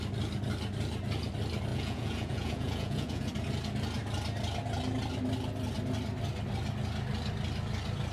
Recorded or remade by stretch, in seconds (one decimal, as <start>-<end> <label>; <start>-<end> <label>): 0.0-1.7 recorded; 1.7-3.3 remade; 3.3-8.1 recorded